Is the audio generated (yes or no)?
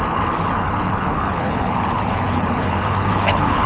yes